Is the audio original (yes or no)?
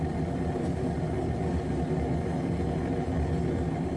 yes